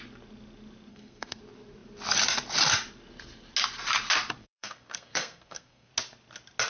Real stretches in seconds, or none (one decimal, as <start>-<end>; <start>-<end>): 0.0-0.9; 1.4-4.4; 5.9-6.7

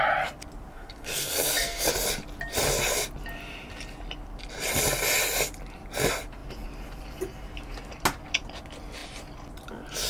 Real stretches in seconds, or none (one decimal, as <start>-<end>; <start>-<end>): 0.0-0.7; 1.9-10.1

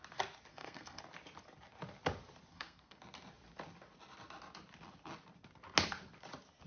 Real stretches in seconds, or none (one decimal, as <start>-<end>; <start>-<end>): 0.0-0.5; 1.0-2.5; 3.0-6.7

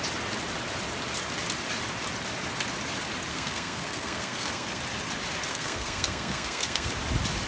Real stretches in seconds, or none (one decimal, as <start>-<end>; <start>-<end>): 0.0-3.3; 4.8-5.5; 6.9-7.5